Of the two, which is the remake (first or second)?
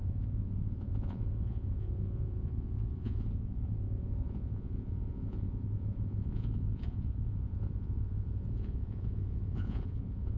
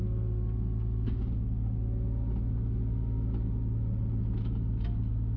first